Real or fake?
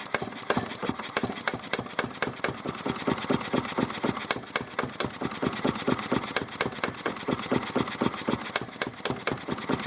real